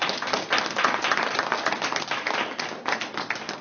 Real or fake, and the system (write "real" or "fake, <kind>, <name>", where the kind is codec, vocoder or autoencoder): real